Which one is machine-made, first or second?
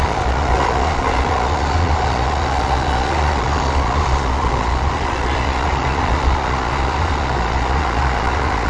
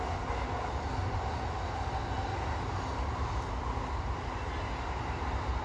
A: first